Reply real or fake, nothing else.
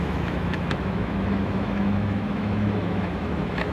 fake